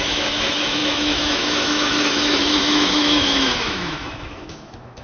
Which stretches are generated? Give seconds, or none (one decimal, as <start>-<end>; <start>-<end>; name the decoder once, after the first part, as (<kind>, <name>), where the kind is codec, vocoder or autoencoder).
0.0-5.0 (autoencoder, DAC-VAE)